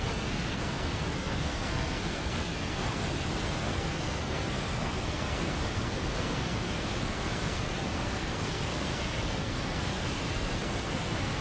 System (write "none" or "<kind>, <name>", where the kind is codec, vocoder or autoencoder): codec, SNAC